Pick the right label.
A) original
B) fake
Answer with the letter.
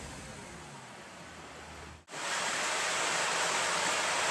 A